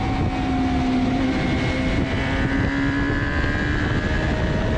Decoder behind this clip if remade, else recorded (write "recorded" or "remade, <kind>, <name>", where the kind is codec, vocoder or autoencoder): recorded